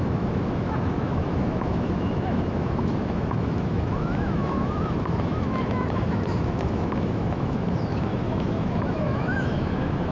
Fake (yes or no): yes